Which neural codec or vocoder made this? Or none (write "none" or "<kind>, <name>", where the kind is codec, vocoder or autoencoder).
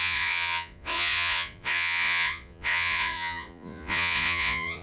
vocoder, Vocos